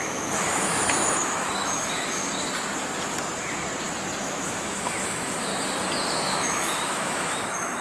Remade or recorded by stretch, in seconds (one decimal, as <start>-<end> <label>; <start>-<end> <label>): 0.0-2.2 remade; 2.2-4.2 recorded; 4.2-5.5 remade; 5.5-6.1 recorded; 6.1-7.8 remade